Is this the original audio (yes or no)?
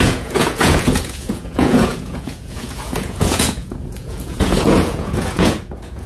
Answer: no